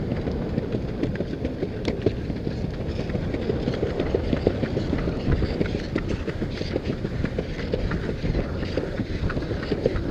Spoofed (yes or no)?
yes